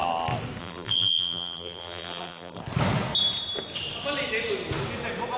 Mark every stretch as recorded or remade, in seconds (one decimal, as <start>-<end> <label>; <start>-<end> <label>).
0.0-0.6 recorded; 0.6-2.6 remade; 2.6-5.4 recorded